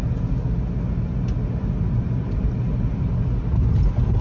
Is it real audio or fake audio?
real